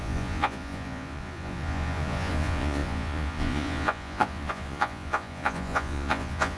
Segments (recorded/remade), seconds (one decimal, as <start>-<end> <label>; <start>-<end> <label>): 0.0-6.6 remade